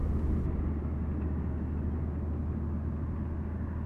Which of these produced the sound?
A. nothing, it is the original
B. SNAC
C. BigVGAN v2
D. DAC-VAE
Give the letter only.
A